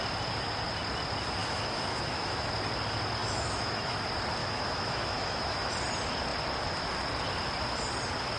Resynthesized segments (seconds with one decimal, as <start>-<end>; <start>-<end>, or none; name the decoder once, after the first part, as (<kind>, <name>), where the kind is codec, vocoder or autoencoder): 1.4-2.5 (autoencoder, DAC-VAE); 3.2-3.9; 4.4-5.7